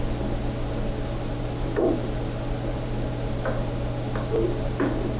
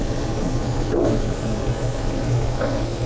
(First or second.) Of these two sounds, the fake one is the second